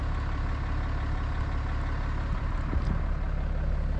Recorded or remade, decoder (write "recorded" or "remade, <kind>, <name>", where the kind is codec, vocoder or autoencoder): recorded